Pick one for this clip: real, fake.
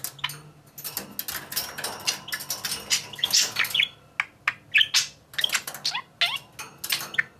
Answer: real